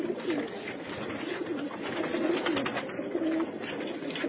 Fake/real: real